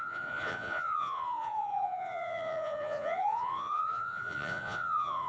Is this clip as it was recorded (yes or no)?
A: no